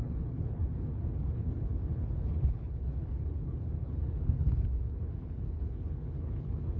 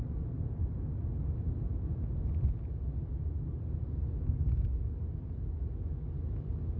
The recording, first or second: second